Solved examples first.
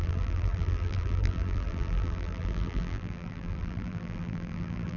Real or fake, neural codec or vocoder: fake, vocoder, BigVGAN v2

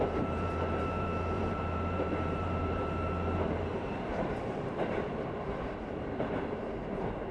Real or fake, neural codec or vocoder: fake, vocoder, BigVGAN v2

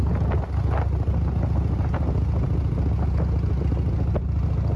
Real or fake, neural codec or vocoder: real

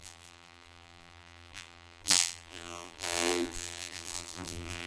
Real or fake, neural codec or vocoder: fake, vocoder, BigVGAN v2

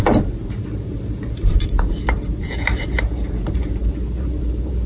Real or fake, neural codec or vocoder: fake, vocoder, BigVGAN v2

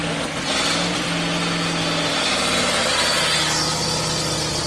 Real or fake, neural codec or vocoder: real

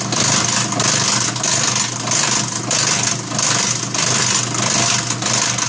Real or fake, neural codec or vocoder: real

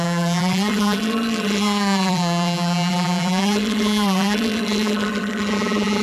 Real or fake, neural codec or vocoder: fake, vocoder, BigVGAN v2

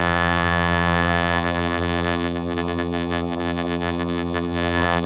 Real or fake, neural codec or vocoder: fake, vocoder, BigVGAN v2